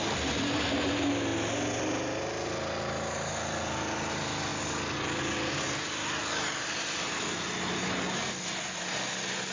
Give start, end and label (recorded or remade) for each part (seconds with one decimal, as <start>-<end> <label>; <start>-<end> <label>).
0.0-9.5 recorded